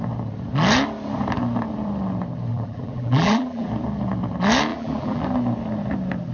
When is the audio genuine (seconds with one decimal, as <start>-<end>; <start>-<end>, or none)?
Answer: 0.0-2.5; 3.7-4.7; 5.2-6.3